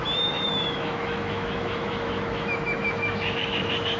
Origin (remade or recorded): remade